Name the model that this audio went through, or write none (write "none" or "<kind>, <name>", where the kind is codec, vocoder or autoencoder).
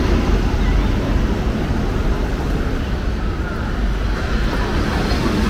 none